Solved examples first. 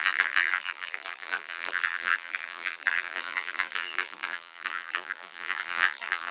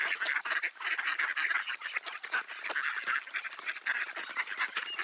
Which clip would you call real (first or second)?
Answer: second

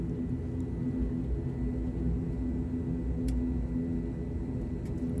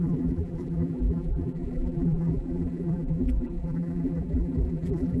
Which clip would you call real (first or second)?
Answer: first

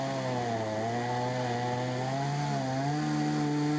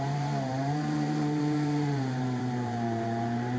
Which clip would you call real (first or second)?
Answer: first